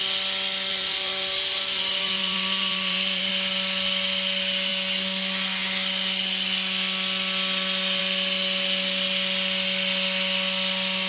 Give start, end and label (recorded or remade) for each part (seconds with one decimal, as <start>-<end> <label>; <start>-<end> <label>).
0.0-0.7 recorded; 0.7-3.3 remade; 3.3-11.1 recorded